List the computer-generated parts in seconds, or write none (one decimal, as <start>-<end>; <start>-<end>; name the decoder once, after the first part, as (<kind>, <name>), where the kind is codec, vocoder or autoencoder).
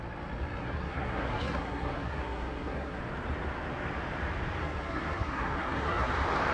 0.6-3.0 (codec, SNAC); 4.6-6.1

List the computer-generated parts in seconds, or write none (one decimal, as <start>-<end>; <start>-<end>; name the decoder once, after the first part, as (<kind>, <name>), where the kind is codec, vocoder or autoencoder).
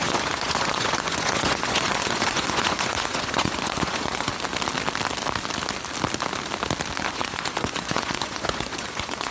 0.0-4.3 (vocoder, Vocos); 7.0-9.3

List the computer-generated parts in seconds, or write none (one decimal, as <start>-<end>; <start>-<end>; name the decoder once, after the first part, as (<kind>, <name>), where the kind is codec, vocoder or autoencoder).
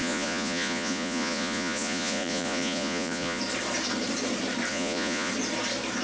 0.0-3.4 (vocoder, Vocos); 4.7-5.3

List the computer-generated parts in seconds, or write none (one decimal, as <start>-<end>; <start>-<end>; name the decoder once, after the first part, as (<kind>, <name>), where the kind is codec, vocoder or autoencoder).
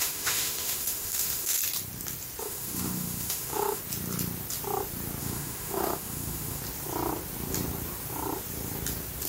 0.0-1.6 (autoencoder, DAC-VAE); 2.4-3.8; 5.2-6.6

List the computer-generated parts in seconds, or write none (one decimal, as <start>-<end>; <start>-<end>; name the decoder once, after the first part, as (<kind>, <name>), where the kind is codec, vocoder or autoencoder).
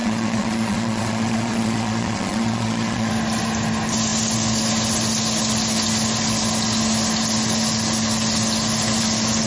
0.0-3.1 (vocoder, Vocos)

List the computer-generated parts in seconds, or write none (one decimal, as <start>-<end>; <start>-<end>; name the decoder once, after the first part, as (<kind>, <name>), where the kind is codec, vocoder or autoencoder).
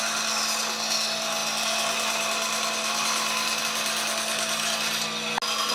none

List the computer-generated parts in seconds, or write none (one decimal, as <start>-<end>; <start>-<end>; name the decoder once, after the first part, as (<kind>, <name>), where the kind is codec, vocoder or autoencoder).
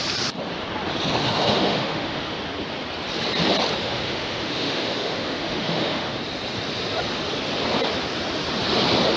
1.2-2.4 (autoencoder, DAC-VAE); 3.8-6.2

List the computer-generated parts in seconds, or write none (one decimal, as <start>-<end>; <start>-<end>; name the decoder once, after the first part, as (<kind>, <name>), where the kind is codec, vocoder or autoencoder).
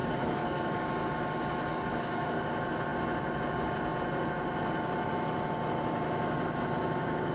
0.0-0.8 (codec, DAC); 1.7-2.4